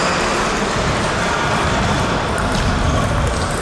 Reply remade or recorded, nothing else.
recorded